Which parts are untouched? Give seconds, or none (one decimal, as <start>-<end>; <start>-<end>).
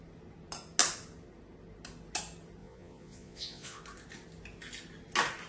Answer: 0.0-2.6; 3.8-5.5